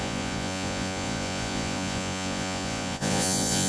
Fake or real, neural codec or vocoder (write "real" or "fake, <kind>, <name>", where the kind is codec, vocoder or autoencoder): fake, vocoder, Vocos